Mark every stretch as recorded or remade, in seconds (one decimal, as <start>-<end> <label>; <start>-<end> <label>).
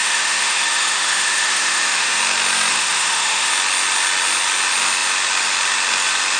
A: 0.0-2.2 remade; 2.2-2.7 recorded; 2.7-3.5 remade; 3.5-6.4 recorded